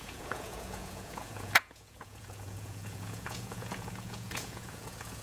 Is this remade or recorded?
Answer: remade